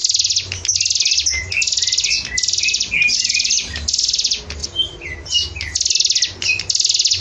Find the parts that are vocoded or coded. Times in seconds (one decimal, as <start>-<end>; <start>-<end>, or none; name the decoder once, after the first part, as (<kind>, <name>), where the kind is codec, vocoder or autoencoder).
none